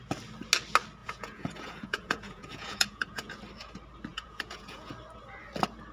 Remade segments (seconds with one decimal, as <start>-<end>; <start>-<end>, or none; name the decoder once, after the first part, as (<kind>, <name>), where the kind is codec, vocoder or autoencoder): 1.0-3.4 (vocoder, Vocos); 4.1-4.9